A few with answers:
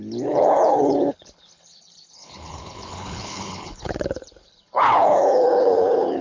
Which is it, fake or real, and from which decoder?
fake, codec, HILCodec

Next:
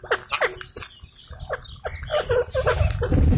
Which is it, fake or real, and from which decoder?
real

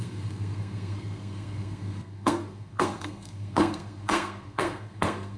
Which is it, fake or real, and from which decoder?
fake, codec, SNAC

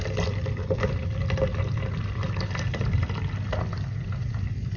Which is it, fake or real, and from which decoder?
fake, vocoder, BigVGAN v2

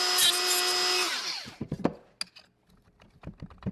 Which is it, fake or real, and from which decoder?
real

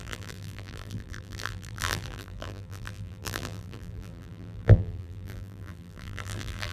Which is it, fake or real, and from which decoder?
fake, vocoder, BigVGAN v2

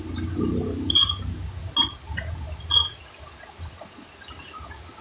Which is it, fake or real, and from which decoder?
real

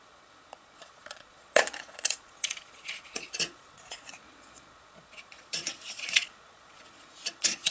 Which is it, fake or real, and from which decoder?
fake, vocoder, Vocos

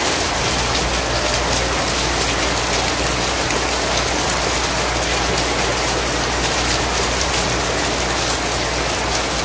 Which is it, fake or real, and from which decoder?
real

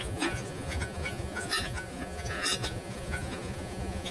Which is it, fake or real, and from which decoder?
fake, vocoder, Vocos